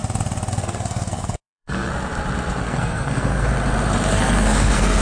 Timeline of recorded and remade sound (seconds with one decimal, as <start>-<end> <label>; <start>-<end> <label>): 0.0-0.5 recorded; 0.5-1.9 remade; 1.9-2.6 recorded; 2.6-3.5 remade; 3.5-4.1 recorded; 4.1-5.0 remade